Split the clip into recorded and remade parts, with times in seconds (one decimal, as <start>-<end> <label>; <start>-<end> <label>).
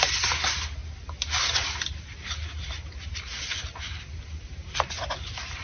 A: 0.0-5.6 recorded